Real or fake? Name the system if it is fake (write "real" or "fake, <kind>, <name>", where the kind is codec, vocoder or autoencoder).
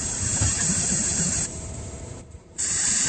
fake, vocoder, BigVGAN v2